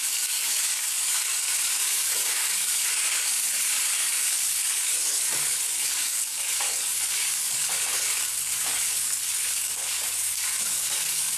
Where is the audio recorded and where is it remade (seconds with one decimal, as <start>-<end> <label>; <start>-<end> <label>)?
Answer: 0.0-11.4 remade